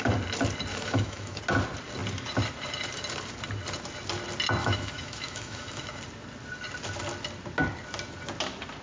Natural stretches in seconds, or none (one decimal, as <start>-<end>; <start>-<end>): 0.0-0.7; 1.4-4.6; 6.0-8.8